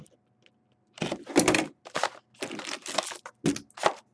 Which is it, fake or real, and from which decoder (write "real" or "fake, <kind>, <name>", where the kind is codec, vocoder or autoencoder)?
real